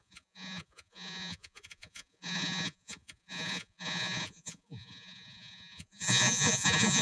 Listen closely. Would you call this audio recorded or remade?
remade